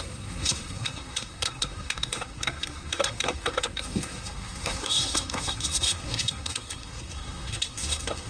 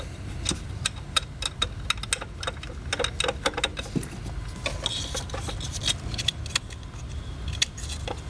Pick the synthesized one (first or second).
first